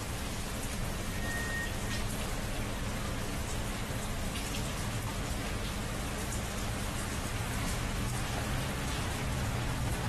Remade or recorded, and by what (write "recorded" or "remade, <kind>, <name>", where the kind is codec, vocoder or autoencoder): recorded